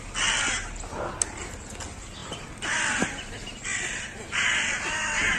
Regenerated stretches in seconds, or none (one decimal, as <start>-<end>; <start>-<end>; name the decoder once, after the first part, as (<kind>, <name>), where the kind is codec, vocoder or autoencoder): none